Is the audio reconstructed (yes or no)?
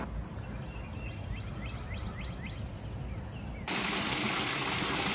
no